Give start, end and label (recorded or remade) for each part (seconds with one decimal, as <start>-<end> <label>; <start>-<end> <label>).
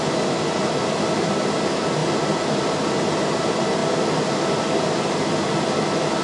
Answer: 0.0-6.2 recorded